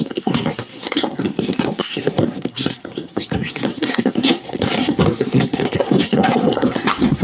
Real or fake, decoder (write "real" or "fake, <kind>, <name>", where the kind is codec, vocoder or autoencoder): fake, codec, SNAC